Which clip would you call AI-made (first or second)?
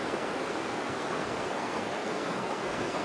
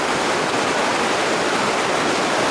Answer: first